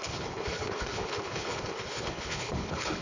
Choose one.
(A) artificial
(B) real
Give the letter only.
A